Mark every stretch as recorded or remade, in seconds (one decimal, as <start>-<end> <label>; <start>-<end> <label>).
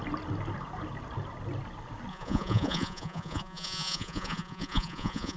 0.0-2.1 recorded; 2.1-5.4 remade